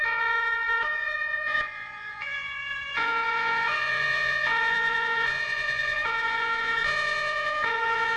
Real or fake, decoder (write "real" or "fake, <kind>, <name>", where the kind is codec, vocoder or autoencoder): fake, vocoder, Vocos